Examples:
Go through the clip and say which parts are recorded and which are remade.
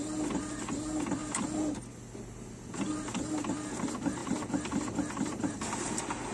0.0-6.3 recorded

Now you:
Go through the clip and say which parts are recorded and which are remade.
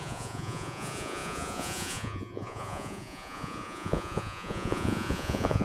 0.0-5.6 remade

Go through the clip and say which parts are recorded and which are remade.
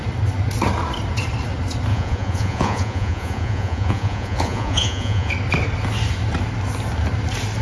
0.0-1.9 recorded; 1.9-5.3 remade; 5.3-7.6 recorded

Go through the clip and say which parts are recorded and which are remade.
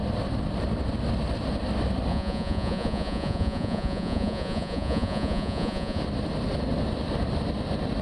0.0-2.1 recorded; 2.1-6.0 remade; 6.0-8.0 recorded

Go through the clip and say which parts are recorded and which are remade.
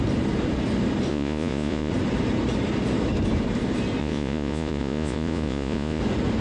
0.0-1.1 recorded; 1.1-1.9 remade; 1.9-4.0 recorded; 4.0-6.0 remade; 6.0-6.4 recorded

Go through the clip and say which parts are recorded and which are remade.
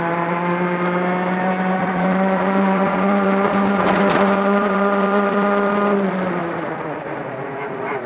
0.0-1.8 recorded; 1.8-5.7 remade; 5.7-6.4 recorded; 6.4-8.1 remade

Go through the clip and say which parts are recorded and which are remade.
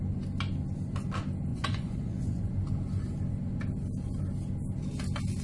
0.0-1.5 recorded; 1.5-2.5 remade; 2.5-5.4 recorded